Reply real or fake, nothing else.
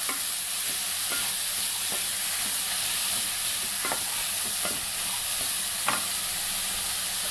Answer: real